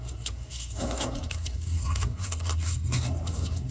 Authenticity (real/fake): fake